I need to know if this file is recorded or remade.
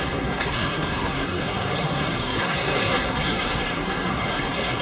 remade